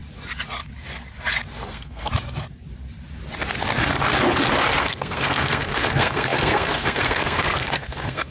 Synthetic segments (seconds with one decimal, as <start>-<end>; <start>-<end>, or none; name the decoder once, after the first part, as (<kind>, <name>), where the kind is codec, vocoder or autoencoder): 1.7-2.1 (codec, SNAC); 4.8-8.3